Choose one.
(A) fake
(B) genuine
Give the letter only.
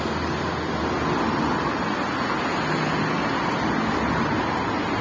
B